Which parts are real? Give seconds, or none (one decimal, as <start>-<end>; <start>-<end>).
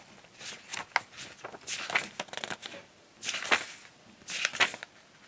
0.0-5.3